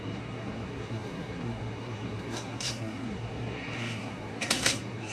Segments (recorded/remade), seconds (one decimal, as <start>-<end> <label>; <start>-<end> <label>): 0.0-5.1 remade